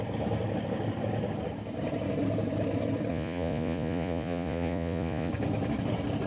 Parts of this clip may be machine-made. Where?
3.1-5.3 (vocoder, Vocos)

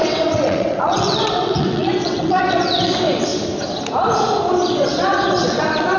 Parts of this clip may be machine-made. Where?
0.0-3.3 (vocoder, WaveNeXt); 4.7-6.0

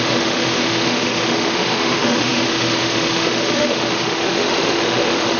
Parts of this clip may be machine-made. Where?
0.0-5.4 (autoencoder, DAC-VAE)

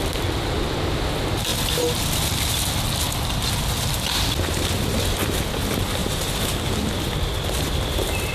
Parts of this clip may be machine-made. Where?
none

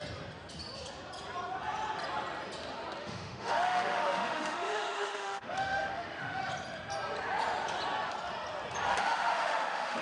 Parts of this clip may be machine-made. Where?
3.0-6.4 (autoencoder, DAC-VAE); 8.9-10.0